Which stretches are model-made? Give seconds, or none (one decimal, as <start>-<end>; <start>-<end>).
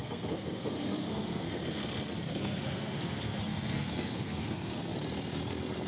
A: 0.0-1.8; 2.3-4.9